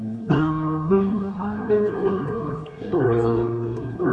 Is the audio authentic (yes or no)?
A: no